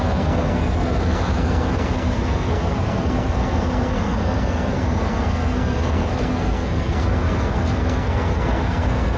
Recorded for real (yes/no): no